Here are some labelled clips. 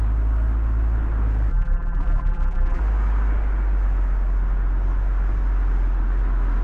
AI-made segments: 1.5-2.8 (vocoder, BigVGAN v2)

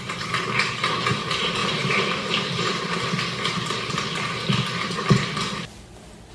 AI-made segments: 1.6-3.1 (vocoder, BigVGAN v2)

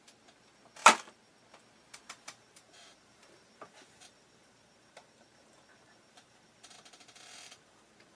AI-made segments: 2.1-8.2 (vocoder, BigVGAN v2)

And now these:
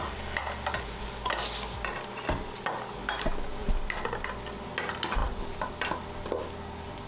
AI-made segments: 3.6-4.4 (vocoder, BigVGAN v2); 5.2-6.0

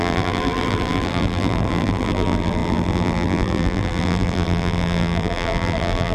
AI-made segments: 0.0-6.1 (vocoder, BigVGAN v2)

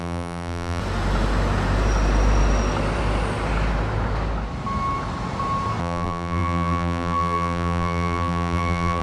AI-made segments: 0.0-0.8 (vocoder, BigVGAN v2); 5.8-9.0

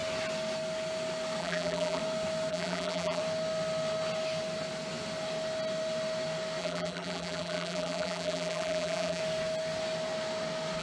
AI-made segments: 1.4-2.0 (vocoder, BigVGAN v2); 2.5-3.2; 6.6-9.2

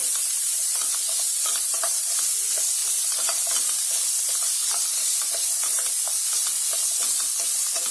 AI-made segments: 0.0-2.0 (vocoder, BigVGAN v2); 4.5-5.9